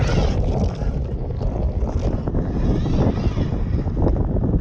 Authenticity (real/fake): real